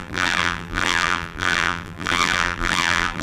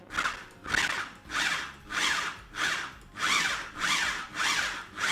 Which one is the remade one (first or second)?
first